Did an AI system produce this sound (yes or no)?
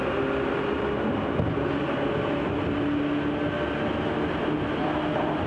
no